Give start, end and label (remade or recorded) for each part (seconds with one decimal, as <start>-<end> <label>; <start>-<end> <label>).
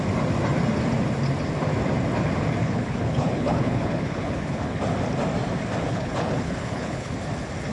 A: 0.0-2.6 recorded; 2.6-4.8 remade; 4.8-5.9 recorded; 5.9-7.1 remade; 7.1-7.7 recorded